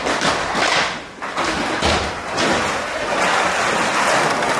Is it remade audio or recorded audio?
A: recorded